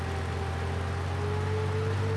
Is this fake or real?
real